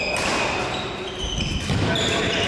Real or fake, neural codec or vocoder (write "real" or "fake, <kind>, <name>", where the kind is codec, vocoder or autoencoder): real